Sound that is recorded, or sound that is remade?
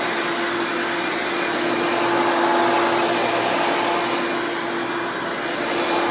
recorded